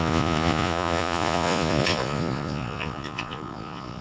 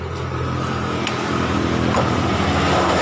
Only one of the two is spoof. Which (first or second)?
first